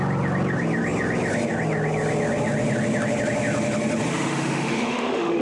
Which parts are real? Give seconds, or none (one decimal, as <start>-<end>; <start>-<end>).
0.0-4.1